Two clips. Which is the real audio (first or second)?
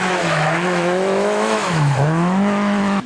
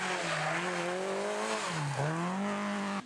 second